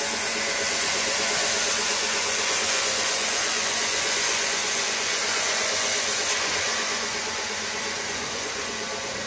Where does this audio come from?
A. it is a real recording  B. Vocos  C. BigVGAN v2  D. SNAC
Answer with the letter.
B